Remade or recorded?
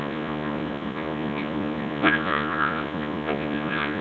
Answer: remade